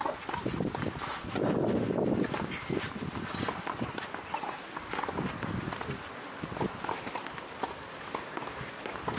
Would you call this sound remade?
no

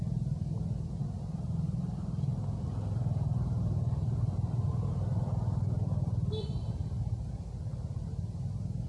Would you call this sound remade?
no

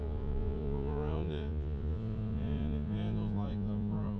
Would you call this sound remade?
yes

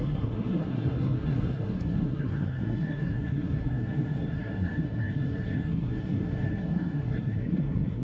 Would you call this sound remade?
yes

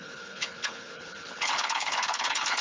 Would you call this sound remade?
yes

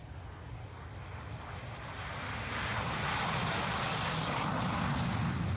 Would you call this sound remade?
no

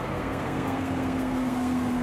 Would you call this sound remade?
yes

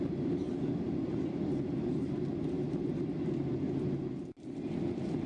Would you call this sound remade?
no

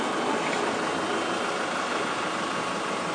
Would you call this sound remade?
no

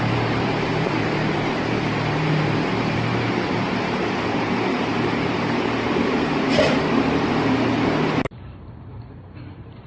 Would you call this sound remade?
yes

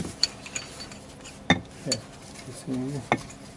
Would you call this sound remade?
no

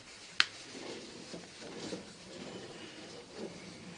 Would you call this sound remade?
no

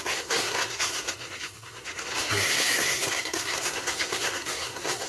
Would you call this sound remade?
yes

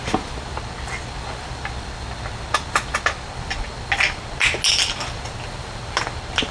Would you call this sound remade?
no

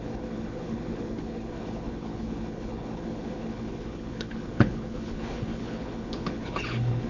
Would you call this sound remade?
yes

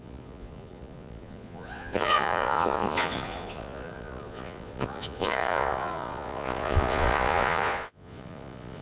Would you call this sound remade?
yes